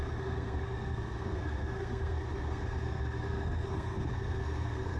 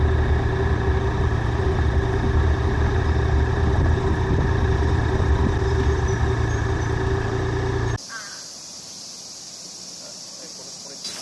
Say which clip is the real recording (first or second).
second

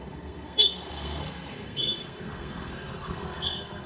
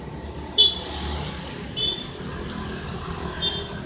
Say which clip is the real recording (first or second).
second